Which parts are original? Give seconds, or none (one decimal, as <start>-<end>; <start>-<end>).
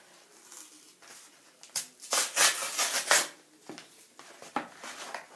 0.0-5.4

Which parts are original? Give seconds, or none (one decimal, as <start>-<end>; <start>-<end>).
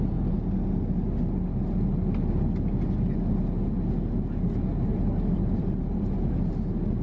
0.0-4.9; 6.5-7.0